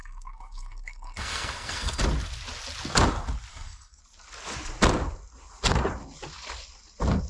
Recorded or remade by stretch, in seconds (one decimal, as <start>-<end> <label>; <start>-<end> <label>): 0.0-2.0 remade; 2.0-3.5 recorded; 3.5-4.0 remade; 4.0-7.3 recorded